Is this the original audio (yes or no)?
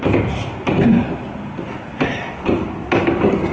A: yes